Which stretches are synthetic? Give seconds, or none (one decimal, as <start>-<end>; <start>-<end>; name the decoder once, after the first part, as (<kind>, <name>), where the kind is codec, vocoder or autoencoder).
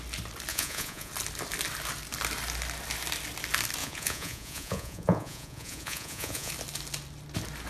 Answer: 0.5-1.1 (vocoder, Vocos); 3.8-6.5